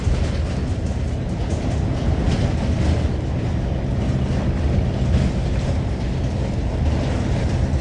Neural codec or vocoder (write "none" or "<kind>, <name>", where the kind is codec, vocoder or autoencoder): none